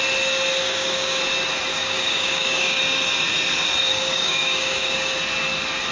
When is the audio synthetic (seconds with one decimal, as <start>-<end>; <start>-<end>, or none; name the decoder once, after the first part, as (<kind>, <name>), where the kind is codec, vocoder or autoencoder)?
0.6-1.2 (codec, DAC); 1.7-2.8; 3.9-5.1